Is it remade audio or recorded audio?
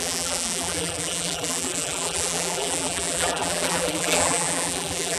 remade